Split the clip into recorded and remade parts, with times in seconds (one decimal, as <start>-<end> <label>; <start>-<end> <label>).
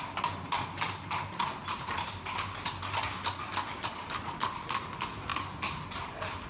0.0-6.5 recorded